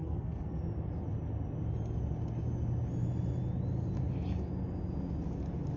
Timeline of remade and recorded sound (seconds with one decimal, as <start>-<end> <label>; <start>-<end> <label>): 0.0-0.6 remade; 0.6-5.8 recorded